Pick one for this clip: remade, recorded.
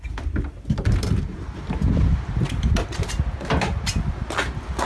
recorded